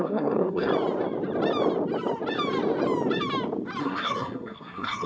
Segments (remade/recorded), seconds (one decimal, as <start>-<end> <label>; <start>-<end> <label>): 0.0-0.7 remade; 0.7-3.8 recorded; 3.8-5.1 remade